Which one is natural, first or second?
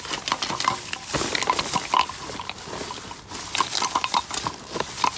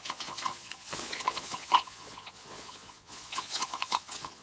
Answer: first